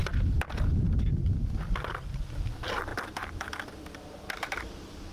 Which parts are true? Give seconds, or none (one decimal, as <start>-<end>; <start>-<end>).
0.0-5.1